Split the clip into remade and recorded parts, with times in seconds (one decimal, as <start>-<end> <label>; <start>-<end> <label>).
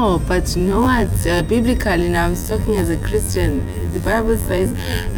0.0-0.6 recorded; 0.6-1.4 remade; 1.4-2.0 recorded; 2.0-5.2 remade